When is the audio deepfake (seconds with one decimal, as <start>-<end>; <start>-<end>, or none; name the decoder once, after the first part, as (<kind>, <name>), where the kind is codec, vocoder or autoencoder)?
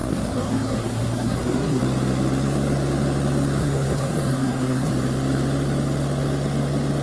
0.0-1.8 (codec, SNAC); 3.6-4.9